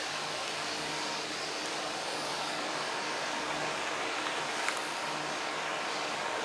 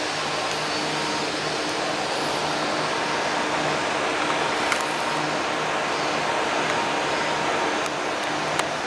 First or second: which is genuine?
second